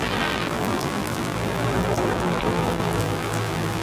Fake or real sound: fake